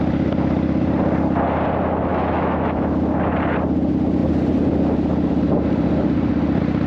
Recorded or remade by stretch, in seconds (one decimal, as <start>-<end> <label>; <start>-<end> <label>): 0.0-2.1 recorded; 2.1-2.9 remade; 2.9-6.9 recorded